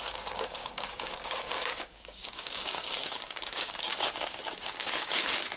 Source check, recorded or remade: remade